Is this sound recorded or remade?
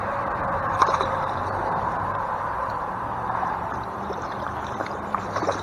remade